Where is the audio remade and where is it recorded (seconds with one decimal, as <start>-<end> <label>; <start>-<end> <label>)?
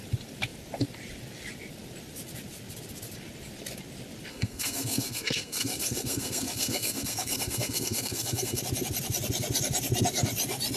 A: 0.0-4.3 recorded; 4.3-8.6 remade; 8.6-10.8 recorded